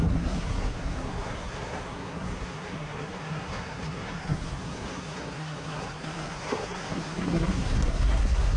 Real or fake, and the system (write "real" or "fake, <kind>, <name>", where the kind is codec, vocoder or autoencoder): fake, codec, SNAC